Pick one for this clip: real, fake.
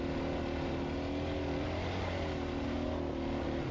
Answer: real